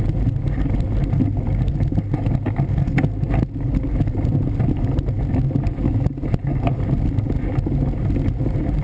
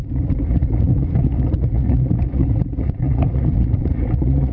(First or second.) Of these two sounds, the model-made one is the second